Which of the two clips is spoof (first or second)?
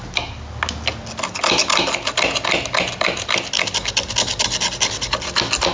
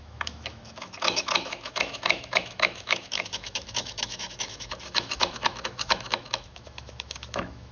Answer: second